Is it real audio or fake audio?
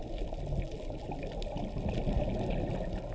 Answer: real